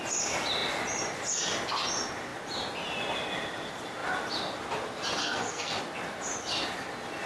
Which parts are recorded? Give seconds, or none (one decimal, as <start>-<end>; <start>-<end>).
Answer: 0.0-5.2; 5.8-7.3